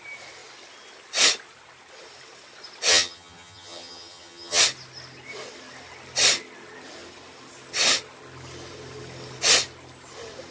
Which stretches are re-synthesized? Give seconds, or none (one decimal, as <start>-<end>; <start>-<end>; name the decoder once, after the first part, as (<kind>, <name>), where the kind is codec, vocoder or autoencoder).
2.9-4.6 (vocoder, HiFi-GAN)